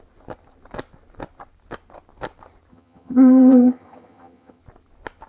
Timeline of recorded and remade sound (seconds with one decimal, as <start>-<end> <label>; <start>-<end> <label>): 0.0-2.7 recorded; 2.7-4.6 remade; 4.6-5.3 recorded